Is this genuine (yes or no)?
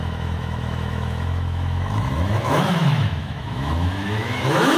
no